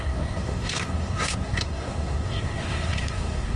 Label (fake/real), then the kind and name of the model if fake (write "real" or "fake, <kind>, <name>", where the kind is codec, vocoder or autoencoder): fake, codec, SNAC